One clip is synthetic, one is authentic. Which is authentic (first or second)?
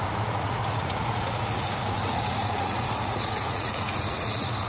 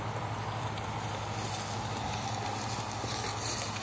second